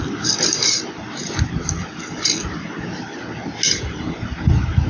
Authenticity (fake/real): real